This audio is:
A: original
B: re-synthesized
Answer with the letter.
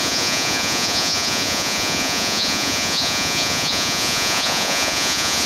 B